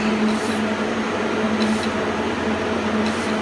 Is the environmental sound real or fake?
real